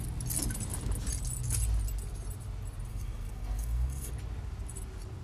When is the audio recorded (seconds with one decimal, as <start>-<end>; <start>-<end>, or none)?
0.0-2.9; 4.1-5.2

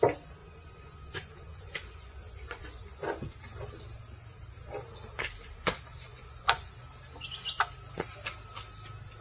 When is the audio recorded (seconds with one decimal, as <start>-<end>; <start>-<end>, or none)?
0.0-0.4; 2.8-6.1; 6.8-9.2

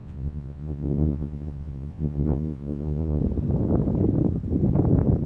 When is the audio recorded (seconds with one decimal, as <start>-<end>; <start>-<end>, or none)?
3.2-5.3

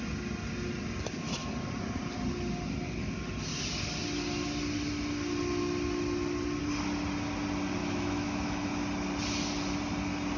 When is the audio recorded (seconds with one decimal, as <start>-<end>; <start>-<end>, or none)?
0.0-7.8; 8.7-10.4

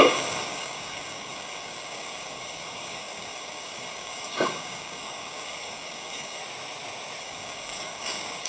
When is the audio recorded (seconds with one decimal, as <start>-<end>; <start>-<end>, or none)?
6.4-7.2